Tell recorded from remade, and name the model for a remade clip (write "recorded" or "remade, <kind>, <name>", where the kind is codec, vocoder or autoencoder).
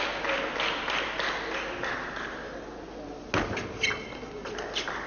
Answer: recorded